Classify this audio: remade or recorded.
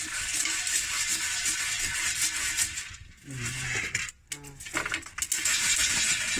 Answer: recorded